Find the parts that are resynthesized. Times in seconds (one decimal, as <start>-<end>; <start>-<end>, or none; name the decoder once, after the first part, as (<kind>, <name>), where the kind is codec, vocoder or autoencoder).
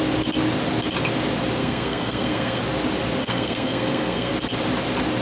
1.6-2.6 (codec, SNAC); 3.2-4.3